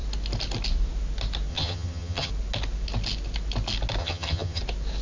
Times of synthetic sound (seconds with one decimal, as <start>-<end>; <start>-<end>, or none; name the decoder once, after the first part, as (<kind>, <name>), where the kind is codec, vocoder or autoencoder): 1.5-2.3 (vocoder, HiFi-GAN); 4.0-4.6